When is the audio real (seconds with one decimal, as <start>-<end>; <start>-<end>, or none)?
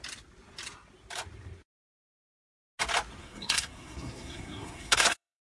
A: 0.0-3.2